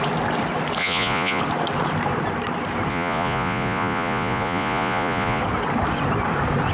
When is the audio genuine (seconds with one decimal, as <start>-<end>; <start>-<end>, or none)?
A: 0.0-0.8; 1.4-2.9; 5.4-6.7